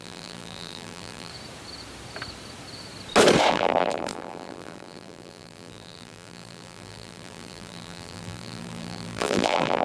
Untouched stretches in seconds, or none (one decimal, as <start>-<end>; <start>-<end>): 1.3-3.5